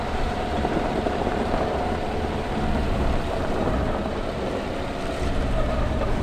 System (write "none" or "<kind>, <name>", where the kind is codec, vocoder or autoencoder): vocoder, BigVGAN v2